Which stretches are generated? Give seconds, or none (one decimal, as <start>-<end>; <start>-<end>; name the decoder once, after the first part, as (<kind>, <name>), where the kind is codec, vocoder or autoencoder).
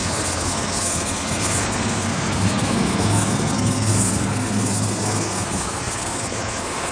0.0-6.9 (codec, SNAC)